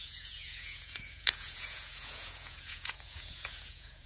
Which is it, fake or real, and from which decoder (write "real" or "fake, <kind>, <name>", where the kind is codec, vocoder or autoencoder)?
fake, vocoder, Vocos